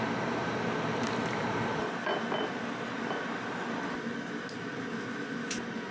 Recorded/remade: recorded